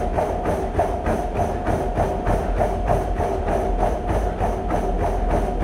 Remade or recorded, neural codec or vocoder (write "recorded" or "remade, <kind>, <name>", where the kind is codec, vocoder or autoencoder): recorded